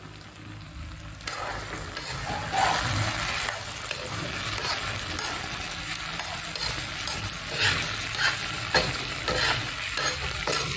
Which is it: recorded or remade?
recorded